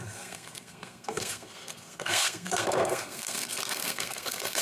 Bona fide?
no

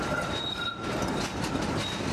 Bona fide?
yes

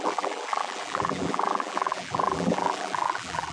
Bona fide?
no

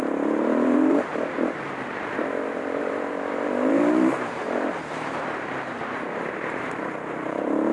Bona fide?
no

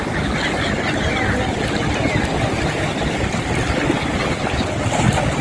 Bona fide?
yes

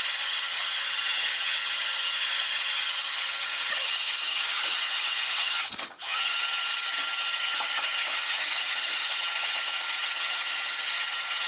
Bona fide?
no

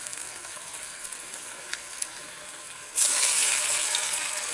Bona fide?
no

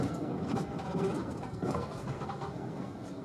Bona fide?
no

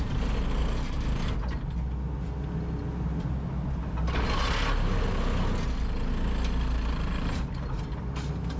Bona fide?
yes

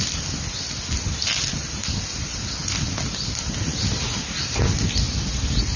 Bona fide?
yes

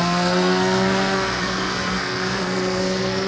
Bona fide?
no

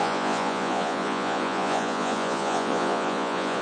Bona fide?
no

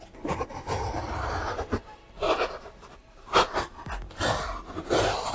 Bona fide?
yes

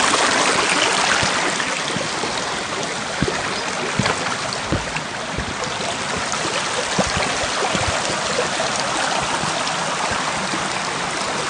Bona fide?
yes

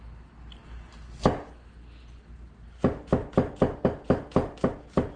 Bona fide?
yes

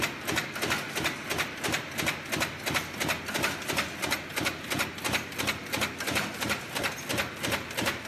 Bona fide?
yes